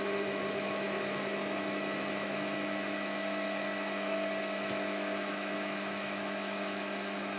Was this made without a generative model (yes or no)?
no